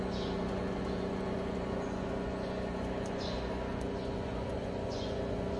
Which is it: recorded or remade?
remade